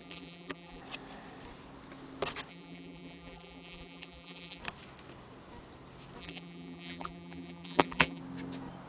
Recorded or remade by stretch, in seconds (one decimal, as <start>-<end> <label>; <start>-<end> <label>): 0.0-0.8 remade; 0.8-2.5 recorded; 2.5-4.6 remade; 4.6-6.2 recorded; 6.2-8.2 remade; 8.2-8.9 recorded